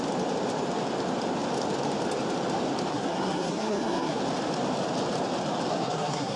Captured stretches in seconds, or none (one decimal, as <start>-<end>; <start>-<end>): 0.0-2.9; 4.2-5.7